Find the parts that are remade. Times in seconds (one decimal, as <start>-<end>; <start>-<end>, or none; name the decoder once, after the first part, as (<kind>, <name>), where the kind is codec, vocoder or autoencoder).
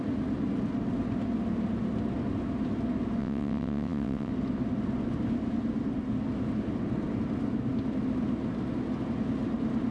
3.2-4.3 (vocoder, WaveNeXt)